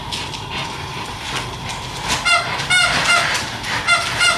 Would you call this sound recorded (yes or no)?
yes